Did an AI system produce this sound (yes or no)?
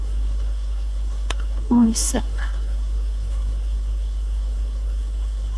yes